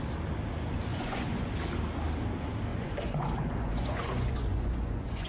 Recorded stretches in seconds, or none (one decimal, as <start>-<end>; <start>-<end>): 0.0-0.9; 1.5-2.7